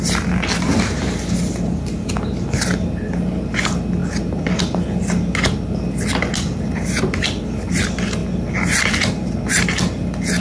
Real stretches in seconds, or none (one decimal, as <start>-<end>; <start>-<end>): 0.0-10.4